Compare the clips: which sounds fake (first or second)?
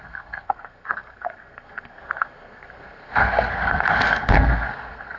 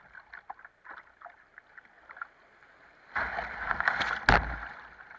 first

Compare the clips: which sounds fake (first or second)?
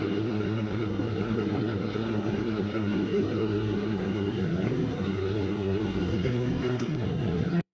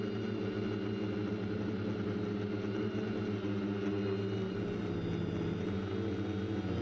first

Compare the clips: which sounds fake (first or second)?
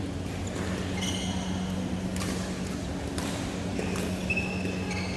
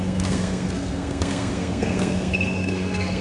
second